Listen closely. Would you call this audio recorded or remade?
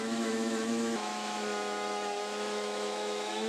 remade